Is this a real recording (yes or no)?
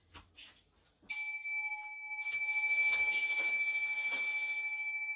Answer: yes